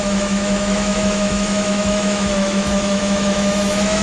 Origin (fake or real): fake